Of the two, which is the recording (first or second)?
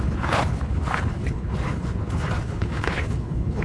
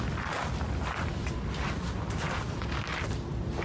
second